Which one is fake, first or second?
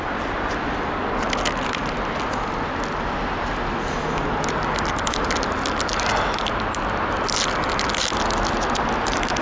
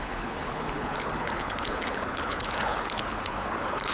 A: second